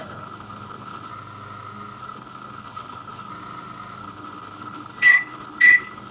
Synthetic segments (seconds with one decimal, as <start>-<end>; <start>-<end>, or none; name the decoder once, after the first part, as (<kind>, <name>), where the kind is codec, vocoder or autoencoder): 0.0-1.1 (codec, HILCodec); 2.0-3.3; 4.0-6.1